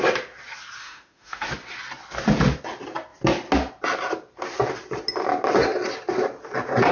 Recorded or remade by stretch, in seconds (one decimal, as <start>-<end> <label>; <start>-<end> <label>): 0.0-0.8 recorded; 0.8-1.5 remade; 1.5-6.9 recorded